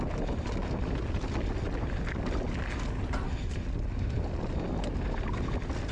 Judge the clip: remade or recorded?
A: recorded